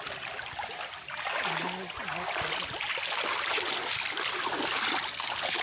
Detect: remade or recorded recorded